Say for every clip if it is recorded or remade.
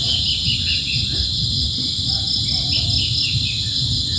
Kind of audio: recorded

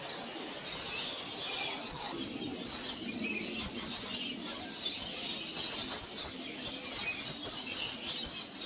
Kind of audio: recorded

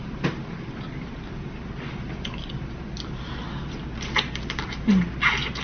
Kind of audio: recorded